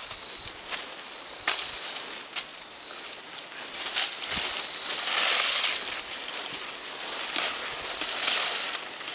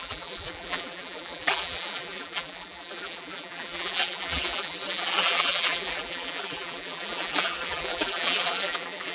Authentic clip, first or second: first